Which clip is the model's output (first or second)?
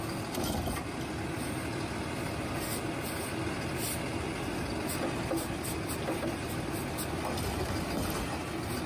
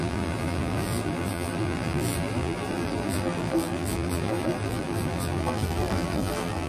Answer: second